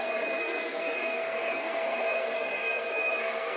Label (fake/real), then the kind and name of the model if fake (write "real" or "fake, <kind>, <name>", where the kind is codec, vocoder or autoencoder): fake, codec, SNAC